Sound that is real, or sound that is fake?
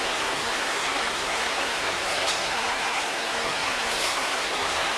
fake